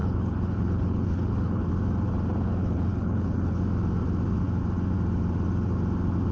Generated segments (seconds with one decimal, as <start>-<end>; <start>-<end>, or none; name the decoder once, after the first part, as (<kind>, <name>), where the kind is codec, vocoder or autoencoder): 0.0-1.7 (codec, HILCodec); 2.6-3.6